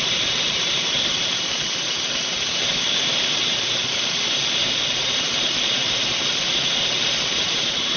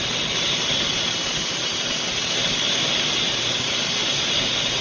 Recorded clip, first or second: second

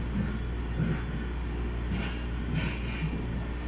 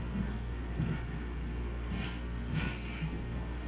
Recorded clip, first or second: first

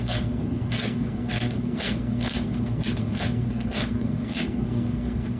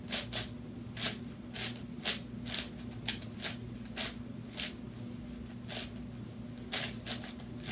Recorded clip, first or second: second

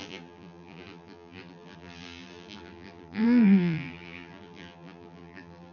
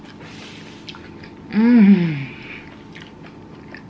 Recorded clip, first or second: second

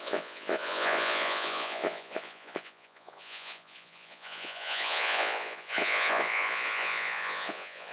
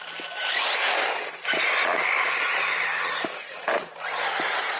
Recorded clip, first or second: second